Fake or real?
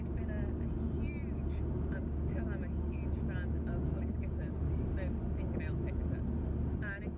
real